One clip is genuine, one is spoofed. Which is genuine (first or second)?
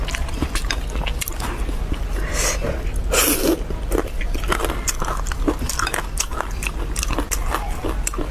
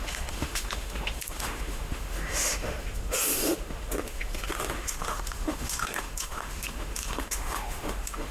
first